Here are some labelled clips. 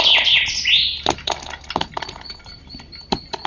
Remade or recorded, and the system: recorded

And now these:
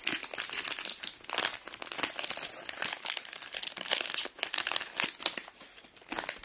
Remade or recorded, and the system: recorded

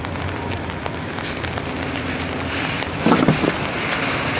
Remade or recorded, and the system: recorded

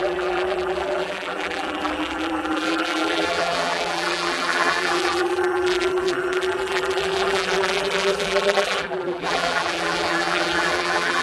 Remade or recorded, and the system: remade, vocoder, BigVGAN v2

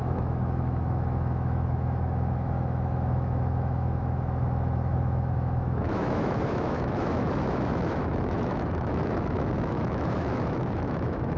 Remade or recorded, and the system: remade, autoencoder, DAC-VAE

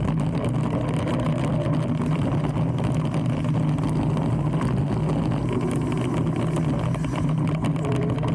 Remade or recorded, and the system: recorded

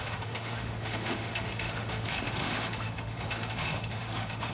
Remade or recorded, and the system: remade, autoencoder, DAC-VAE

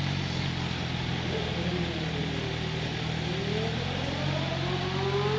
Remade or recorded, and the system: recorded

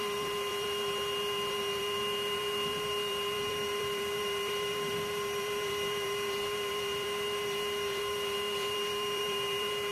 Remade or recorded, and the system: remade, vocoder, BigVGAN v2